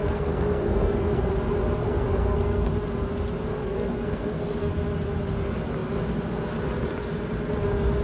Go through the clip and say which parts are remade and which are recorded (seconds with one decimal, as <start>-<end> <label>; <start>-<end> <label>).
0.0-1.3 remade; 1.3-1.8 recorded; 1.8-2.7 remade; 2.7-3.5 recorded; 3.5-4.7 remade; 4.7-8.0 recorded